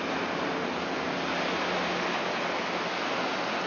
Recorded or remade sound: recorded